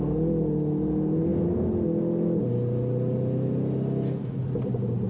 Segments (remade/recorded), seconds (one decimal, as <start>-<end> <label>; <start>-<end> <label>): 0.0-5.1 recorded